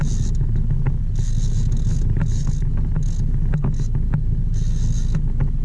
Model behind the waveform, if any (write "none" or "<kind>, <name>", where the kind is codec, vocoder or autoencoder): none